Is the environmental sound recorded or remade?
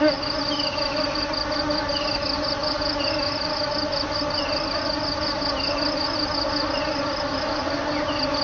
recorded